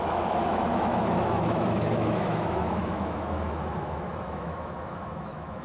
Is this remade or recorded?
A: remade